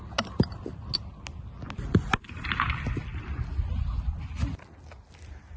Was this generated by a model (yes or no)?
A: no